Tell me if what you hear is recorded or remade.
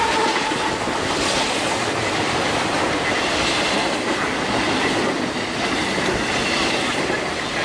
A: recorded